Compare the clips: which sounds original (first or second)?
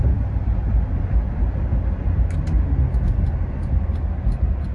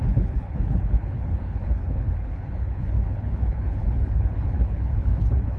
first